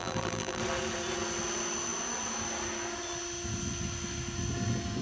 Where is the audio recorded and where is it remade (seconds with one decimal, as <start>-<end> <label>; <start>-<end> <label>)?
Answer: 0.0-0.6 remade; 0.6-5.0 recorded